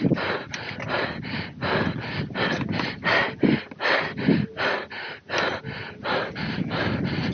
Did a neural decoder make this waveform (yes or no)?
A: no